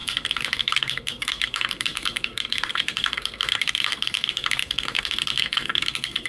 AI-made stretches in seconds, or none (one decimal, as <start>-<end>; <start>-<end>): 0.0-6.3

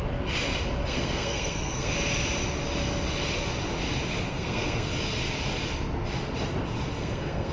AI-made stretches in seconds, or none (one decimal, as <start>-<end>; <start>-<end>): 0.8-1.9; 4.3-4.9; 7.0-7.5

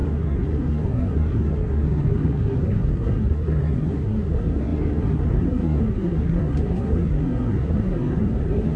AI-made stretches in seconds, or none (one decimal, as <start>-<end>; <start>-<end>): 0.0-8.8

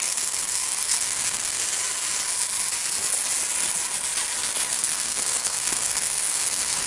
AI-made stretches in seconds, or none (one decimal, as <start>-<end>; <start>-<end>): 0.0-1.6; 4.7-6.9

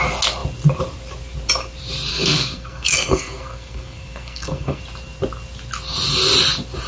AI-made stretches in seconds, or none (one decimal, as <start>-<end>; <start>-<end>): 2.1-4.8

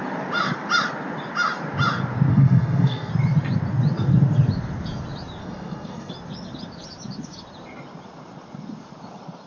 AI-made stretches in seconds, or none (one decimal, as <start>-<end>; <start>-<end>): 2.3-3.1; 5.4-6.1